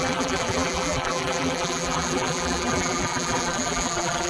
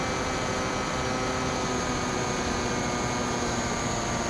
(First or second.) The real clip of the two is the second